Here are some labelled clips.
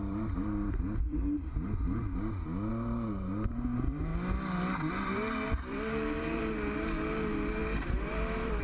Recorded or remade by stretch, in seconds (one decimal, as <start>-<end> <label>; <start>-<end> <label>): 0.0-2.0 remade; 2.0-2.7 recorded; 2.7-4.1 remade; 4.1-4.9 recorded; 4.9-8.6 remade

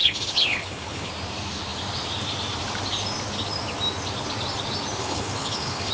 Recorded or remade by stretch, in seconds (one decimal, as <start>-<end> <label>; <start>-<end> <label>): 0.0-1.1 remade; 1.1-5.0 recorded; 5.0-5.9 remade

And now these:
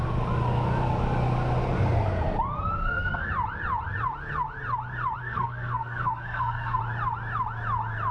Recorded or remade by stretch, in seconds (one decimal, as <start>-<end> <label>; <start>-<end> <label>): 0.0-2.8 recorded; 2.8-3.3 remade; 3.3-5.2 recorded; 5.2-6.8 remade; 6.8-8.1 recorded